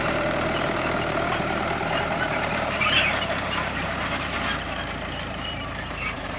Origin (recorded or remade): remade